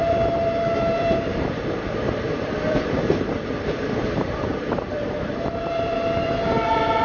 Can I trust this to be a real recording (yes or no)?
no